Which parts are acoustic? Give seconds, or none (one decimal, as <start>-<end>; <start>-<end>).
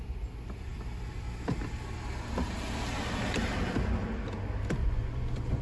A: 0.0-4.8